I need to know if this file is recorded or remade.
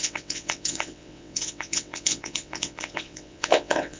remade